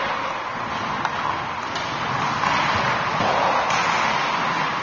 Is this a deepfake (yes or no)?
no